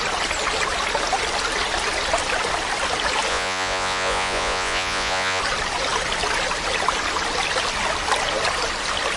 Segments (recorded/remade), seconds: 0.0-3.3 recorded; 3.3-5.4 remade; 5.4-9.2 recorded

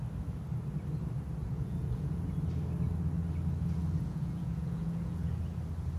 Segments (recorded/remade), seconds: 0.0-1.4 recorded; 1.4-2.2 remade; 2.2-3.8 recorded; 3.8-5.4 remade; 5.4-6.0 recorded

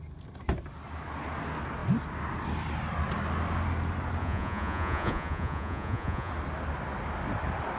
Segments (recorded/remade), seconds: 0.0-4.2 recorded; 4.2-6.3 remade; 6.3-7.8 recorded

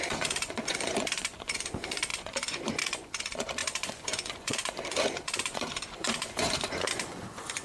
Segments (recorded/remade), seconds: 0.0-7.6 remade

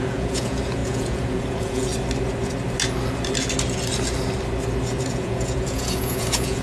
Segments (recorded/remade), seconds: 0.0-1.9 remade; 1.9-5.1 recorded; 5.1-6.6 remade

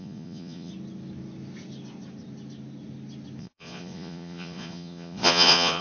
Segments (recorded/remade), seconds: 0.0-0.7 remade; 0.7-3.4 recorded; 3.4-5.8 remade